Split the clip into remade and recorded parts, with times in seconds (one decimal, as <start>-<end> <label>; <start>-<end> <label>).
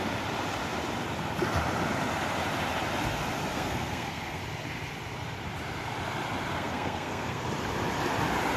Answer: 0.0-3.5 recorded; 3.5-4.4 remade; 4.4-6.5 recorded; 6.5-7.4 remade; 7.4-8.6 recorded